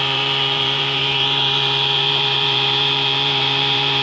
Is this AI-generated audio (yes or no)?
yes